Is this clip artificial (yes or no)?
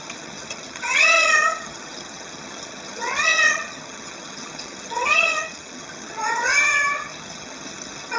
yes